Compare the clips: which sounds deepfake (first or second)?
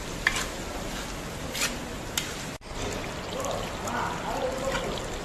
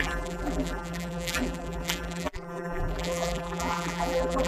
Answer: second